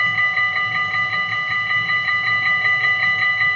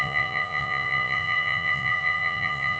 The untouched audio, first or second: first